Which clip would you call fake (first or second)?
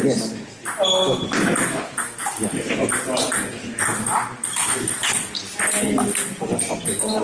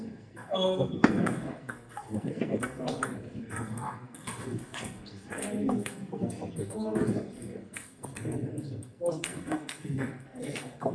second